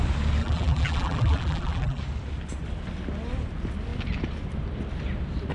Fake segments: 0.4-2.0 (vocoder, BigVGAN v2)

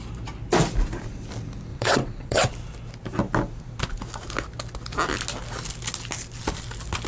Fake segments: 1.7-2.5 (vocoder, WaveNeXt)

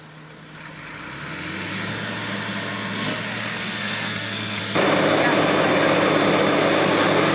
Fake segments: 3.4-4.6 (codec, SNAC)

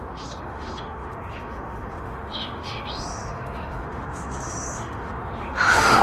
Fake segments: 0.0-6.0 (autoencoder, DAC-VAE)